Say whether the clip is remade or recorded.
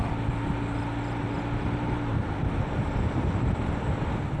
recorded